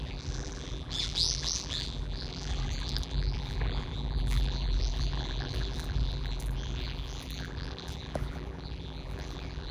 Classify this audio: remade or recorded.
remade